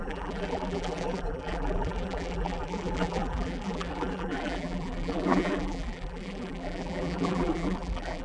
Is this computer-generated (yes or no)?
yes